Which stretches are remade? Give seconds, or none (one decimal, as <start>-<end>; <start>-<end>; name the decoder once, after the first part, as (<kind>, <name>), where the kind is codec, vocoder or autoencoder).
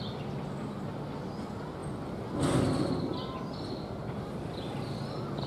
none